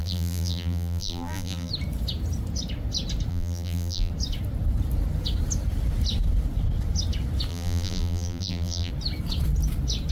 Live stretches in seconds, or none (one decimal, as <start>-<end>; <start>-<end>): 1.7-3.3; 4.1-7.5; 8.9-10.1